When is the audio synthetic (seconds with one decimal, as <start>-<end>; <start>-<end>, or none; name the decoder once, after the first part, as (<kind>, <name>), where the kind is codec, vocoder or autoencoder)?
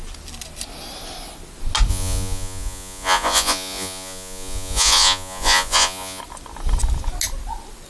1.9-6.2 (vocoder, Vocos)